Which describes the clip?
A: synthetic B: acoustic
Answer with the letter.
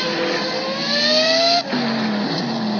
B